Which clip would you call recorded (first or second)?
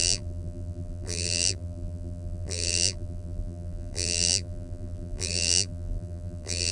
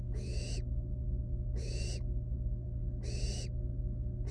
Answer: second